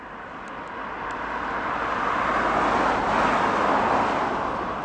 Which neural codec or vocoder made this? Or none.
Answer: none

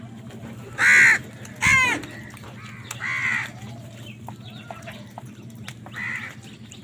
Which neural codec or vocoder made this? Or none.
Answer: none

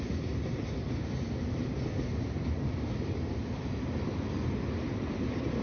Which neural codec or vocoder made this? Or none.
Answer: none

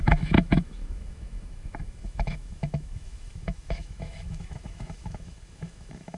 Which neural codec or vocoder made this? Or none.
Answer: autoencoder, DAC-VAE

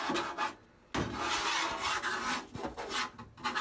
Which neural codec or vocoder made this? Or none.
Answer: none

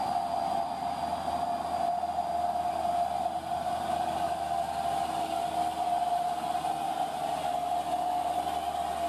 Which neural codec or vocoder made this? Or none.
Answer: none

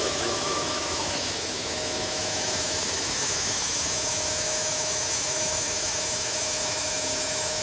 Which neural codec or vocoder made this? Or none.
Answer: autoencoder, DAC-VAE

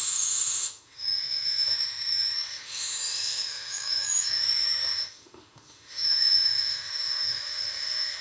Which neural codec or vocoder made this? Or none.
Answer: autoencoder, DAC-VAE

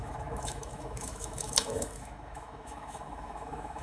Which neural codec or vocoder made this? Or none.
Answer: autoencoder, DAC-VAE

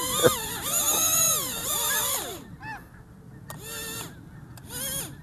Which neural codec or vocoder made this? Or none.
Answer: none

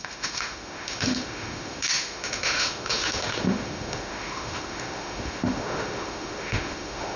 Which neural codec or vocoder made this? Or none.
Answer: autoencoder, DAC-VAE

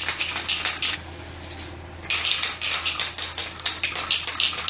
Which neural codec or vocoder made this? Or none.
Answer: none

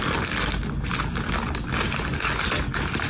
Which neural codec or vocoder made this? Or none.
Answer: none